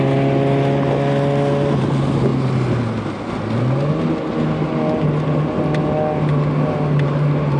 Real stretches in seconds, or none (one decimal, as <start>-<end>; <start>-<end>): 0.0-7.6